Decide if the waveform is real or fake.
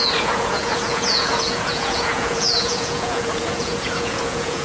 fake